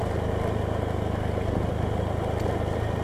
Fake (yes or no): no